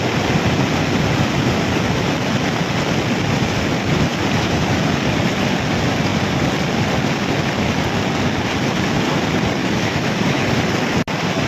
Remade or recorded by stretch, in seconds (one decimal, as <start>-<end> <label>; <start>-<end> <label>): 0.0-9.6 recorded; 9.6-10.5 remade; 10.5-11.5 recorded